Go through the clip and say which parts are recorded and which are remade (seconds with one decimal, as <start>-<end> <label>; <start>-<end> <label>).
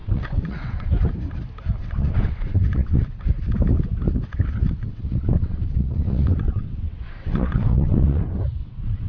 0.0-0.9 remade; 0.9-1.8 recorded; 1.8-3.3 remade; 3.3-4.8 recorded; 4.8-8.2 remade; 8.2-8.6 recorded; 8.6-9.1 remade